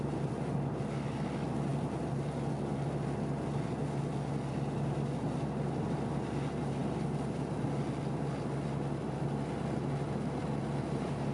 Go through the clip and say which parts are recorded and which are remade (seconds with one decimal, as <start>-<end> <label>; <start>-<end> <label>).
0.0-11.3 recorded

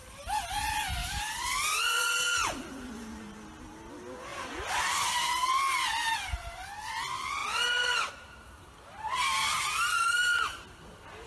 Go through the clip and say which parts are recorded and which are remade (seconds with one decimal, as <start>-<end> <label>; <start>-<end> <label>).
0.0-1.0 recorded; 1.0-2.7 remade; 2.7-4.3 recorded; 4.3-5.6 remade; 5.6-11.3 recorded

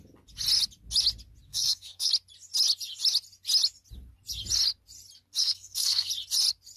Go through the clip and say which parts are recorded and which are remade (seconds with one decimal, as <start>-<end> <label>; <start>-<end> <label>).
0.0-1.5 recorded; 1.5-2.1 remade; 2.1-5.4 recorded; 5.4-6.1 remade; 6.1-6.8 recorded

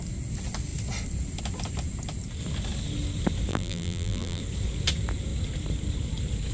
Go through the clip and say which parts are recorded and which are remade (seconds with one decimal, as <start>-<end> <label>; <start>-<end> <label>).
0.0-3.5 recorded; 3.5-4.4 remade; 4.4-6.5 recorded

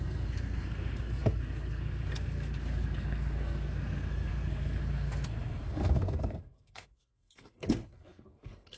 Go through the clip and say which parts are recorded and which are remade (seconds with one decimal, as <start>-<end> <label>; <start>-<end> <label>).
0.0-8.8 remade

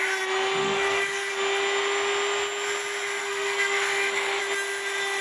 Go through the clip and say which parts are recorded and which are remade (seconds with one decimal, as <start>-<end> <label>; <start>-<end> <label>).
0.0-0.6 recorded; 0.6-1.3 remade; 1.3-3.2 recorded; 3.2-4.4 remade; 4.4-5.2 recorded

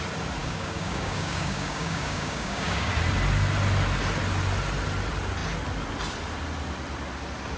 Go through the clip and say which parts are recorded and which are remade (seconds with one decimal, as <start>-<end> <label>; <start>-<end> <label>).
0.0-0.4 recorded; 0.4-2.9 remade; 2.9-7.6 recorded